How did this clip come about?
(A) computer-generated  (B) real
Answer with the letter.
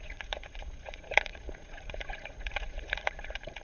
A